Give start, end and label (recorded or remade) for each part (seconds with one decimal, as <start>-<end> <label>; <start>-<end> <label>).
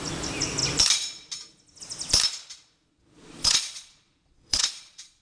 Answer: 0.0-2.9 recorded; 2.9-5.2 remade